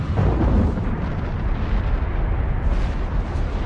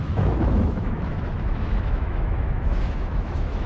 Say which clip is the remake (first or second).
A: second